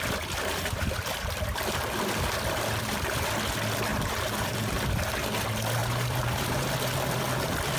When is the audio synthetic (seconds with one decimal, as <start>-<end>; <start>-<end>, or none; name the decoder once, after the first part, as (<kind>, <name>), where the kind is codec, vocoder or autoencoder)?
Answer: 0.5-1.2 (vocoder, BigVGAN v2); 3.9-4.8; 5.8-6.7